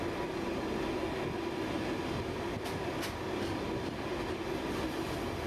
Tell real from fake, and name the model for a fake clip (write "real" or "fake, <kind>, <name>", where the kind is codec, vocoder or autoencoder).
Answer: real